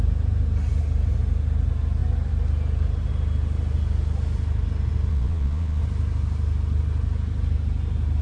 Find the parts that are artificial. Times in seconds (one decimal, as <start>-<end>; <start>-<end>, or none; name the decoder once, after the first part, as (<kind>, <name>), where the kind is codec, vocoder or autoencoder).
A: 5.1-5.8 (vocoder, Vocos)